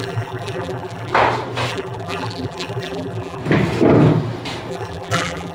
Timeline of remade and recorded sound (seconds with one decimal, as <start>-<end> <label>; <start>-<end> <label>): 0.0-1.1 remade; 1.1-1.7 recorded; 1.7-3.4 remade; 3.4-4.7 recorded; 4.7-5.5 remade